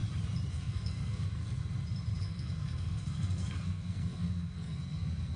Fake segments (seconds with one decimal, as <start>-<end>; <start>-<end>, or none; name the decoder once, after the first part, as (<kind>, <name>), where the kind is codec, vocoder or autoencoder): 0.5-1.6 (codec, SNAC); 2.2-5.4